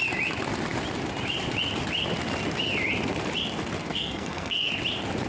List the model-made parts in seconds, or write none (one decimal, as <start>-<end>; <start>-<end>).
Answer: 3.8-4.7